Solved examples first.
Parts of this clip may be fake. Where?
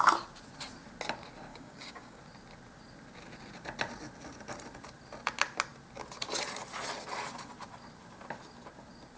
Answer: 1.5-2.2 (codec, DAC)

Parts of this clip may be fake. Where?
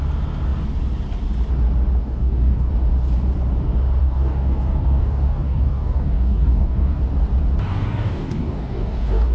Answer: 2.0-2.7 (codec, DAC); 4.0-7.0; 7.7-9.3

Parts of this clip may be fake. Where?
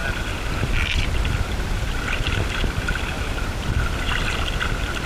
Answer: none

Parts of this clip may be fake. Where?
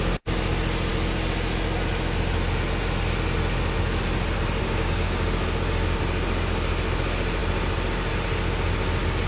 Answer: 4.6-6.0 (codec, DAC)